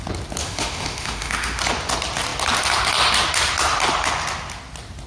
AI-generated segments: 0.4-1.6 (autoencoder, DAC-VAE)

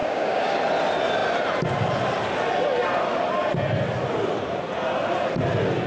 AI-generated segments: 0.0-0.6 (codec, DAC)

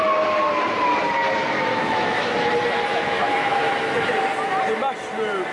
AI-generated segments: 1.7-2.5 (autoencoder, DAC-VAE); 2.9-3.6